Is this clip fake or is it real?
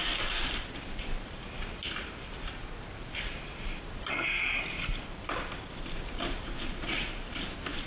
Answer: real